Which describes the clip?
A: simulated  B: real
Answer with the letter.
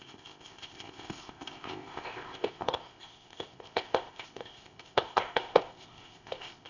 A